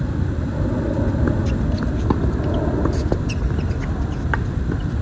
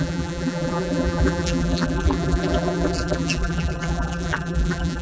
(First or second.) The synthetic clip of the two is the second